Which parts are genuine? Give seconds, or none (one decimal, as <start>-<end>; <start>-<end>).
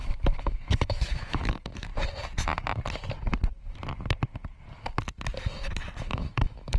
1.9-6.0